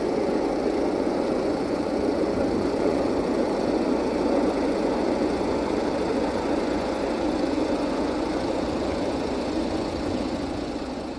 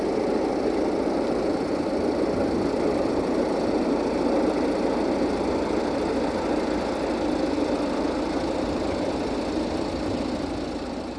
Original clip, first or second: second